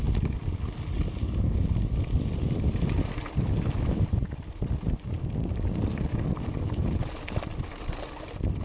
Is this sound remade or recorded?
recorded